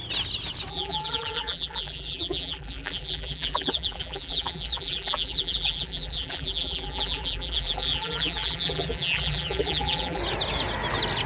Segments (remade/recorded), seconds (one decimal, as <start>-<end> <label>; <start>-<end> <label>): 0.0-0.7 recorded; 0.7-10.2 remade; 10.2-11.3 recorded